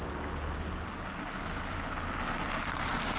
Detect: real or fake real